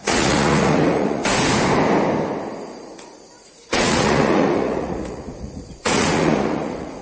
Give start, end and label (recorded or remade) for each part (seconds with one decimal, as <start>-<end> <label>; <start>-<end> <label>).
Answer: 0.0-1.2 remade; 1.2-2.6 recorded; 2.6-7.0 remade